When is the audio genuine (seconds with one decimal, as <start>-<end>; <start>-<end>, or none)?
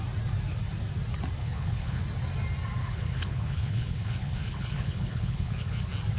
0.0-1.4; 2.0-2.8; 5.8-6.2